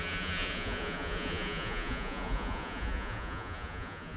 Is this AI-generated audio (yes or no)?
yes